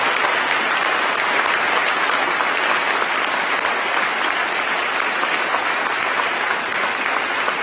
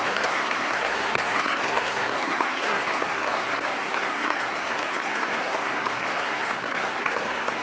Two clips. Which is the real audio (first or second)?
first